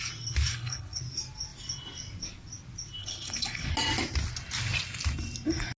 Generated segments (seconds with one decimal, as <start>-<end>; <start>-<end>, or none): 0.5-1.0; 3.0-3.7